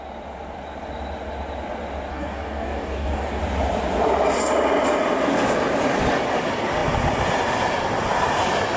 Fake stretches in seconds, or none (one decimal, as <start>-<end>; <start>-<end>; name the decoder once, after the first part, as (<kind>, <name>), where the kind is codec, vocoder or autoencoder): 2.1-3.4 (codec, DAC)